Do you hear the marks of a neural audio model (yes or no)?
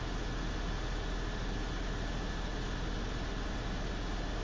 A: no